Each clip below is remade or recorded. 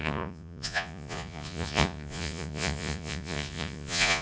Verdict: remade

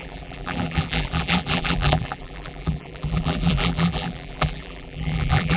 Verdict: remade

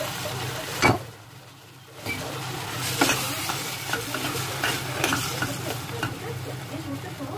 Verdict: remade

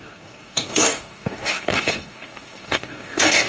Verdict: remade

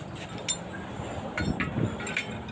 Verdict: recorded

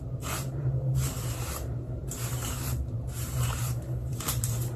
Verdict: remade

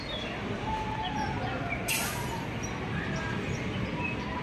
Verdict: recorded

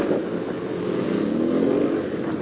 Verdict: recorded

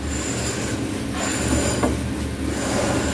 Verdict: recorded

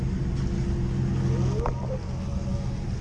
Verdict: recorded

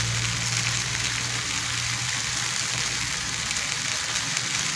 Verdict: recorded